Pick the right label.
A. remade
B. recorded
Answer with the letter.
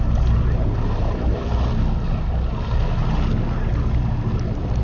B